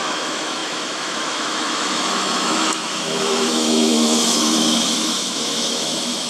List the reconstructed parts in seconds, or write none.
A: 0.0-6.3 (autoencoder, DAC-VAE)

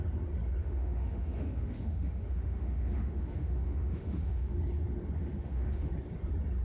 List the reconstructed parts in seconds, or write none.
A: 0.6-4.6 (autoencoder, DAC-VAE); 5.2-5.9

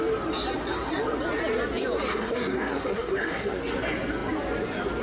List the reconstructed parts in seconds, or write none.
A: 2.1-3.6 (codec, SNAC)

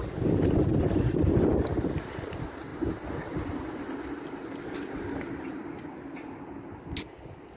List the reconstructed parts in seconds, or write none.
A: none

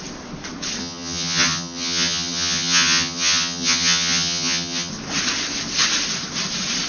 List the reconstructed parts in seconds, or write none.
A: 0.8-4.9 (vocoder, HiFi-GAN)

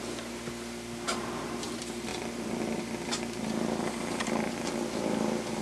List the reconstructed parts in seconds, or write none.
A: none